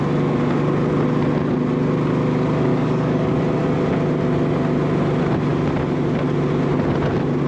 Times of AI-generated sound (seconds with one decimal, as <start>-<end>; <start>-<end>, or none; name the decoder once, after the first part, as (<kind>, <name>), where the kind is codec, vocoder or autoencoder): 2.7-3.4 (codec, DAC)